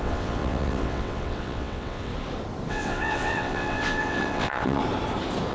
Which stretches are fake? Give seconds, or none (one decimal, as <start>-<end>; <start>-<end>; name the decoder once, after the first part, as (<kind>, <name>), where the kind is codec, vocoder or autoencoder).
0.0-2.1 (vocoder, WaveNeXt); 2.7-4.8